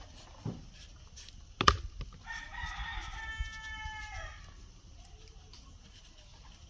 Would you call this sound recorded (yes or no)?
yes